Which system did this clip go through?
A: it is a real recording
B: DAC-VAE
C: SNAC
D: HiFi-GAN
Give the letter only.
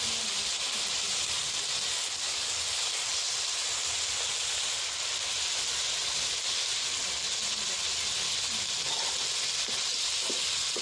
A